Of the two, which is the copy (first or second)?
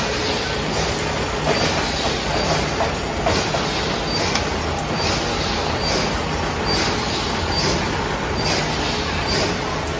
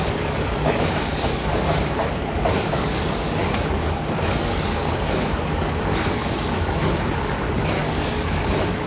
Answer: second